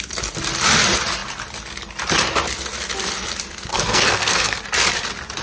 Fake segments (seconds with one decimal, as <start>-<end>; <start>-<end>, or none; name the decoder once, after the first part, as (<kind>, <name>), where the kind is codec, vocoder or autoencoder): 3.7-4.6 (codec, SNAC)